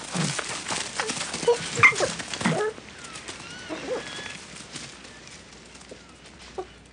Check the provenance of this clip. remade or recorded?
recorded